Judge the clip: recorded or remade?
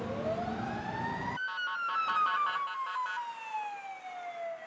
recorded